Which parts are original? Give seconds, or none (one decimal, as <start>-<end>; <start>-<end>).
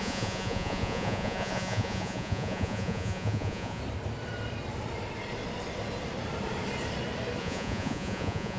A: 3.8-7.4